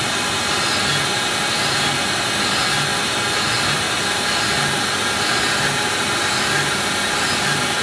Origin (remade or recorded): recorded